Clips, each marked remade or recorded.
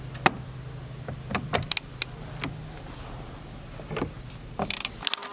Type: recorded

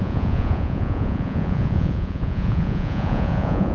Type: remade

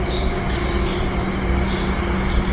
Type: recorded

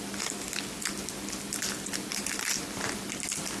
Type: recorded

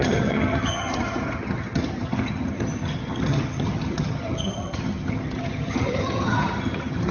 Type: remade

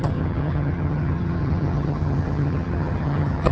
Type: remade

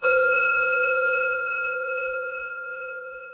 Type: remade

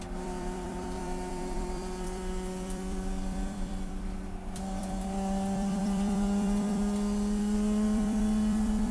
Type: remade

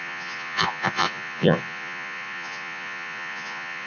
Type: remade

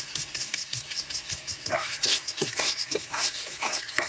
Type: remade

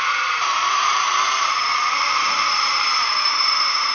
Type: remade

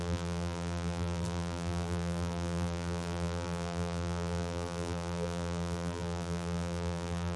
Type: remade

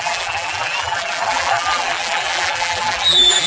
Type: remade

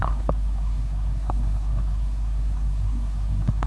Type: remade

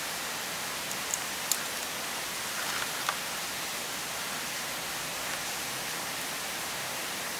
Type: recorded